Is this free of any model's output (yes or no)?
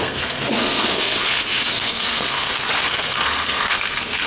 no